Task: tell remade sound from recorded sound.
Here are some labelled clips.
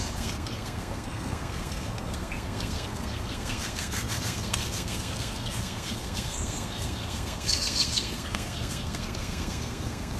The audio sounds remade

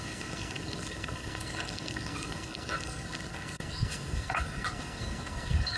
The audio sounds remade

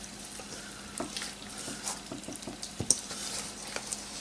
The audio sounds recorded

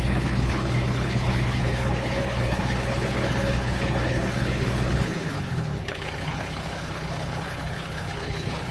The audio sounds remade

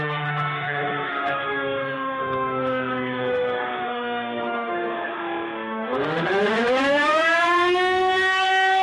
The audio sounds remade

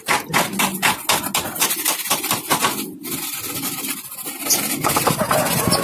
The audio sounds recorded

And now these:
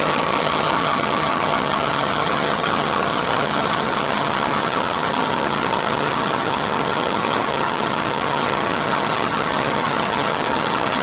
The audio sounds remade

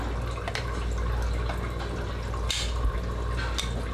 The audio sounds recorded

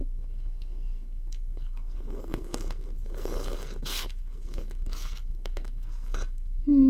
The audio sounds remade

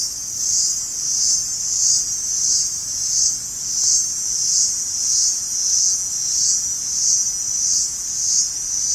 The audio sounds recorded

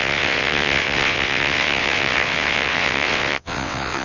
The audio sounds remade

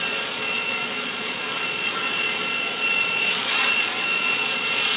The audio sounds remade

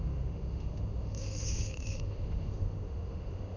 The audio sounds remade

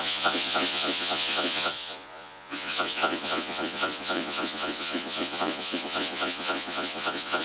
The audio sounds remade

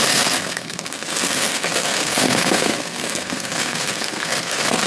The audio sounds remade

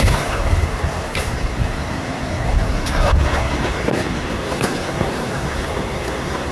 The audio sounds remade